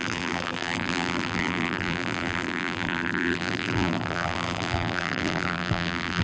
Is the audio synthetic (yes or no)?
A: yes